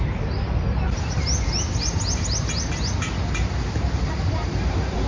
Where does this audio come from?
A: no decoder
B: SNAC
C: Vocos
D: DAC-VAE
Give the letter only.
A